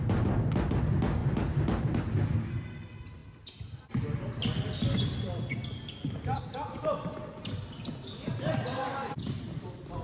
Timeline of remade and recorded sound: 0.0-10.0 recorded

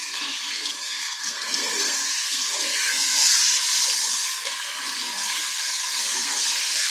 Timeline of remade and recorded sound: 0.0-3.3 remade; 3.3-4.1 recorded; 4.1-6.9 remade

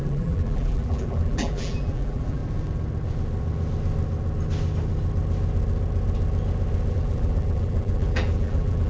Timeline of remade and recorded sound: 0.0-2.4 remade; 2.4-6.9 recorded; 6.9-8.9 remade

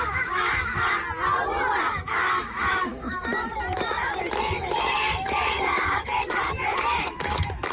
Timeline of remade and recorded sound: 0.0-1.0 remade; 1.0-1.8 recorded; 1.8-7.7 remade

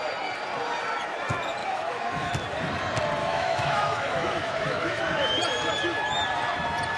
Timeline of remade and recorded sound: 0.0-1.6 recorded; 1.6-2.3 remade; 2.3-3.2 recorded; 3.2-5.0 remade; 5.0-7.0 recorded

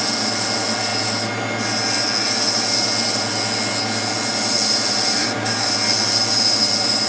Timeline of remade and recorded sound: 0.0-5.2 recorded; 5.2-5.7 remade; 5.7-7.1 recorded

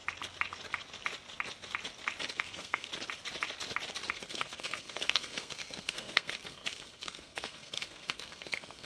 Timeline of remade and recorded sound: 0.0-2.3 recorded; 2.3-2.9 remade; 2.9-4.1 recorded; 4.1-8.9 remade